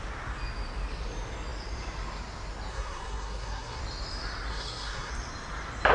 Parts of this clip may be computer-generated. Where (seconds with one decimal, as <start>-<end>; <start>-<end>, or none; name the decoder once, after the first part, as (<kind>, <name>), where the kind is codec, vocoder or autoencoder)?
2.7-3.8 (codec, SNAC); 4.5-5.1

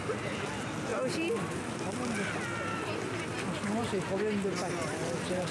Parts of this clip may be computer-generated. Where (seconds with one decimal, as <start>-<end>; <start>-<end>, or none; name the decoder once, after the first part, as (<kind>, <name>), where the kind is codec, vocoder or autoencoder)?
none

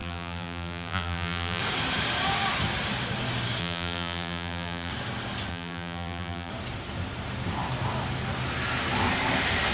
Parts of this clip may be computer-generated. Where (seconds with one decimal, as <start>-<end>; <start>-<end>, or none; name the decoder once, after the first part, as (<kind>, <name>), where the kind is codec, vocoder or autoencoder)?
0.0-1.6 (vocoder, BigVGAN v2); 3.6-4.9; 5.5-6.5

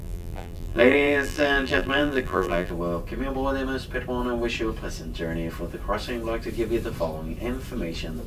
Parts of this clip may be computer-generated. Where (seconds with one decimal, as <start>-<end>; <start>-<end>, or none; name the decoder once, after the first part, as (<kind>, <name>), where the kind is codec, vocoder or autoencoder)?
0.0-2.7 (vocoder, BigVGAN v2)